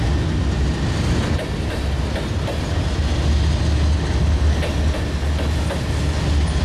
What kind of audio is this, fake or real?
real